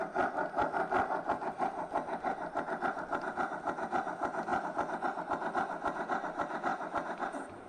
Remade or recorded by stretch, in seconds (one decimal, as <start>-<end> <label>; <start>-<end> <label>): 0.0-6.7 recorded; 6.7-7.7 remade